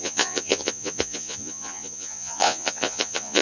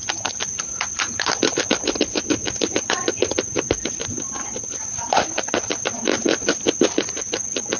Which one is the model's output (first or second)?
first